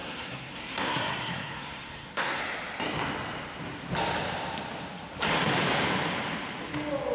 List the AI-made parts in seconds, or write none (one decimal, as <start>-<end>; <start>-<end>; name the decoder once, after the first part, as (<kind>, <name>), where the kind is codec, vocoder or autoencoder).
0.0-2.4 (codec, SNAC)